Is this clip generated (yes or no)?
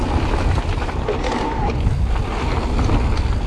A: no